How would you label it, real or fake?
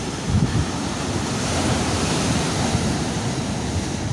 fake